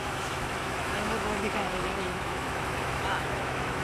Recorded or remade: remade